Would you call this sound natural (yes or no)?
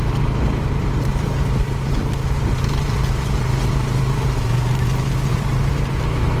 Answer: no